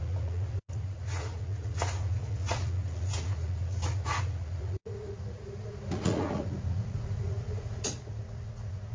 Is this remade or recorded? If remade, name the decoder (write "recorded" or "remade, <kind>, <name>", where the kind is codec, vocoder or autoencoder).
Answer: remade, vocoder, Vocos